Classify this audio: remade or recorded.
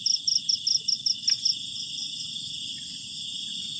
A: recorded